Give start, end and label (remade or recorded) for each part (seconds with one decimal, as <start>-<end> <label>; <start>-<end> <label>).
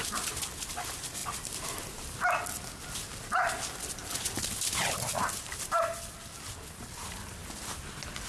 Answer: 0.0-8.3 recorded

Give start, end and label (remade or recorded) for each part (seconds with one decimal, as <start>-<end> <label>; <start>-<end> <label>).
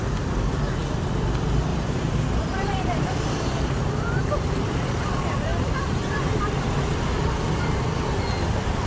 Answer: 0.0-1.7 recorded; 1.7-4.2 remade; 4.2-5.5 recorded; 5.5-6.4 remade; 6.4-8.9 recorded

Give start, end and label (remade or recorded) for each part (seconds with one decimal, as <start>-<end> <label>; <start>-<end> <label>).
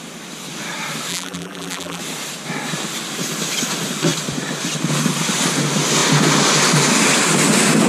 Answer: 0.0-1.1 recorded; 1.1-2.0 remade; 2.0-7.9 recorded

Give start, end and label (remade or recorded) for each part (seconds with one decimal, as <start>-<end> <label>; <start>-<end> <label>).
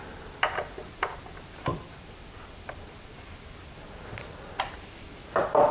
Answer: 0.0-5.7 remade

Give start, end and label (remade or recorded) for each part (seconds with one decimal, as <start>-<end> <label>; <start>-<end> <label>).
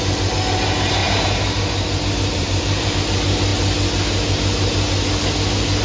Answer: 0.0-1.0 recorded; 1.0-2.9 remade; 2.9-5.8 recorded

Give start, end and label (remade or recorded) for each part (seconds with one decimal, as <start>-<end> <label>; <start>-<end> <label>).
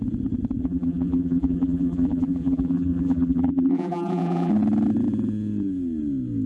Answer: 0.0-0.6 recorded; 0.6-4.5 remade; 4.5-6.5 recorded